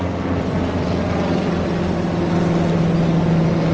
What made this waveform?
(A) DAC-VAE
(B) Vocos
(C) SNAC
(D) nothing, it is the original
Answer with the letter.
D